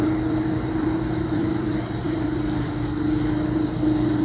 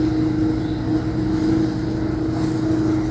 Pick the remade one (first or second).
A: first